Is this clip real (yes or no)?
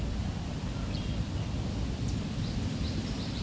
yes